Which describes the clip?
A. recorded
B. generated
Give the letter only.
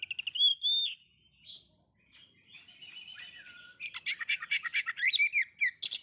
A